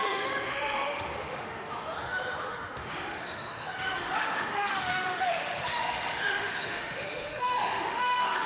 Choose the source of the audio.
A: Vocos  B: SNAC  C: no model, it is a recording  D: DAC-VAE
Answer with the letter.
D